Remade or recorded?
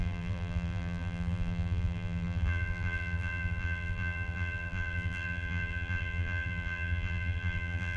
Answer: remade